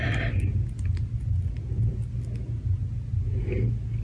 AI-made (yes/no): no